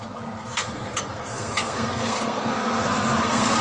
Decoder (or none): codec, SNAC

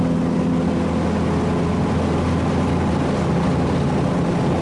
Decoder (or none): none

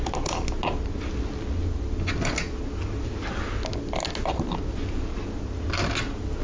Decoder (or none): none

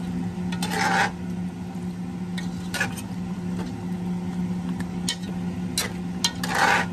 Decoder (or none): none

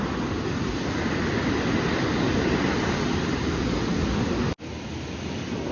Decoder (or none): none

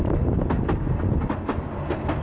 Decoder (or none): none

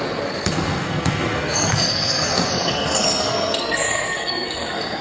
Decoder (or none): codec, SNAC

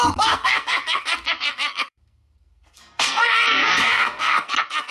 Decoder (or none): codec, SNAC